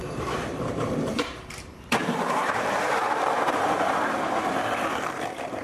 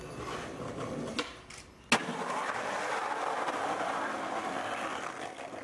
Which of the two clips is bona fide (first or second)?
second